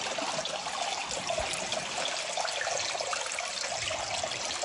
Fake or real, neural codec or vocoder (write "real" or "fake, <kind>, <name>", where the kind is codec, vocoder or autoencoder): real